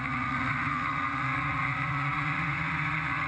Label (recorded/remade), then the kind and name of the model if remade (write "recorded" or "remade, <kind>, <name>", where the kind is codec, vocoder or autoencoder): remade, vocoder, Vocos